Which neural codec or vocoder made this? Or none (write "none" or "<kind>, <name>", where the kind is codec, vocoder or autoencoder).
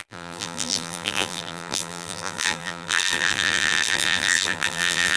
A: vocoder, BigVGAN v2